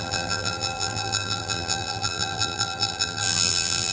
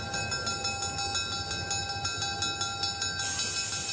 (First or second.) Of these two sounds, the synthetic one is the first